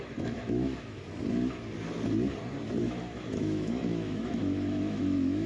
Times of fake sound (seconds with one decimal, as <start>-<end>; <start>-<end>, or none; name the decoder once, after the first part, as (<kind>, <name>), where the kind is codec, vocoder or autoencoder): 0.0-1.1 (autoencoder, DAC-VAE); 2.8-5.5